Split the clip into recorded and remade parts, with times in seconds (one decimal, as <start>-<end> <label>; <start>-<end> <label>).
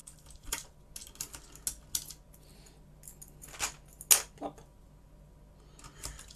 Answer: 0.0-0.8 remade; 0.8-6.4 recorded